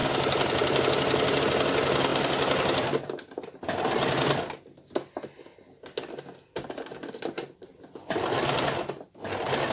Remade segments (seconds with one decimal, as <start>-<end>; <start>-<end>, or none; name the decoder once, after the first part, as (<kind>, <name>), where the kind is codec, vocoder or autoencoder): none